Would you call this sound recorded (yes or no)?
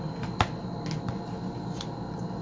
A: yes